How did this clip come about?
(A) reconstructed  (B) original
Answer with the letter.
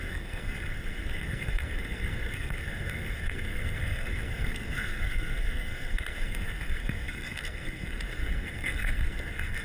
A